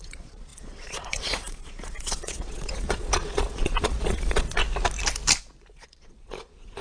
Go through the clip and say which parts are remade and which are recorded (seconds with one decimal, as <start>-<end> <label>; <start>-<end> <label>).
0.0-4.6 remade; 4.6-5.7 recorded; 5.7-6.8 remade